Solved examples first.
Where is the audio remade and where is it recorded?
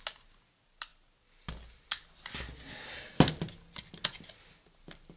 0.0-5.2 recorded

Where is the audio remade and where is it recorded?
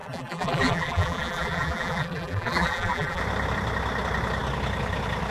0.0-3.2 remade; 3.2-5.3 recorded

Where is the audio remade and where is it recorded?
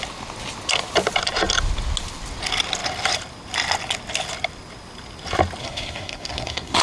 0.0-5.6 recorded; 5.6-6.8 remade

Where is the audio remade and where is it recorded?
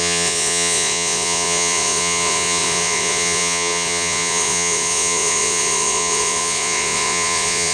0.0-7.7 remade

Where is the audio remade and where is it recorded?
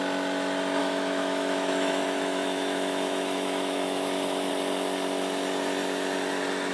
0.0-0.8 recorded; 0.8-4.5 remade; 4.5-6.7 recorded